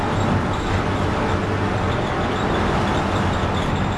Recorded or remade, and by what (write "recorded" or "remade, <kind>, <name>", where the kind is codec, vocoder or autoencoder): recorded